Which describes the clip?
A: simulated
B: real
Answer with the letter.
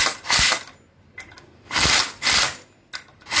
B